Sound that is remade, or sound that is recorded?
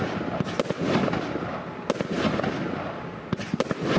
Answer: recorded